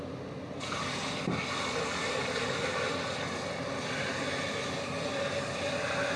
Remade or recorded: recorded